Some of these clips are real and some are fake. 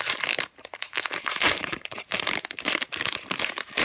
fake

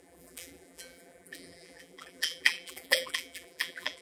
fake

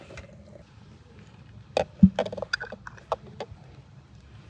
real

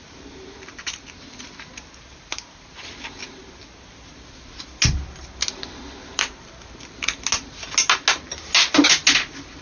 real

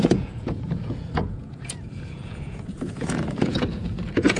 fake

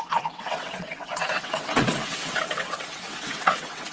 fake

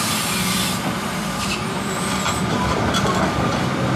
fake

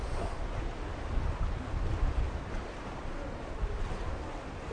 real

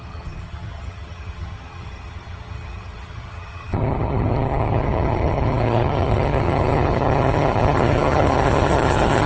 fake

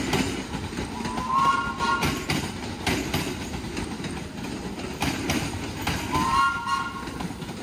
real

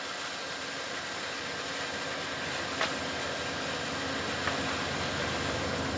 real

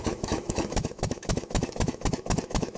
fake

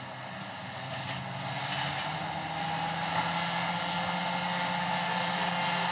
real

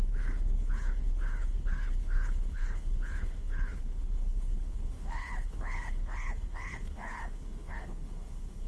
fake